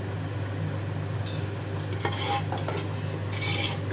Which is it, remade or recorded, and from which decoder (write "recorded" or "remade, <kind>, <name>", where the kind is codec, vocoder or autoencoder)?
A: recorded